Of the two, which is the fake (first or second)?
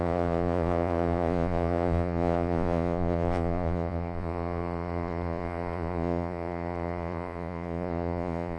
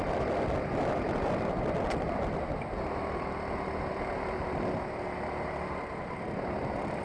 first